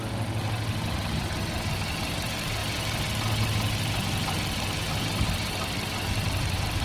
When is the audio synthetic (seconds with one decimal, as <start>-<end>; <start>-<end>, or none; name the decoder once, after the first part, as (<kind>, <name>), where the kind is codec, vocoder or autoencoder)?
none